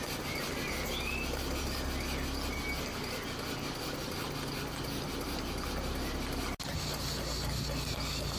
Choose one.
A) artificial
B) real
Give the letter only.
B